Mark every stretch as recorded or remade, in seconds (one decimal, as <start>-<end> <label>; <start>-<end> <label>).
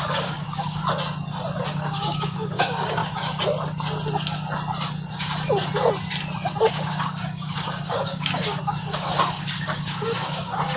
0.0-0.8 remade; 0.8-1.7 recorded; 1.7-3.0 remade; 3.0-6.7 recorded; 6.7-10.8 remade